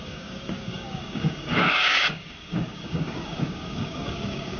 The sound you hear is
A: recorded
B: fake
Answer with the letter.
B